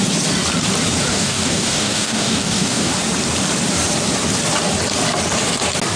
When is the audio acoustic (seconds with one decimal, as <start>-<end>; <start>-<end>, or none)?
0.0-1.1; 2.9-6.0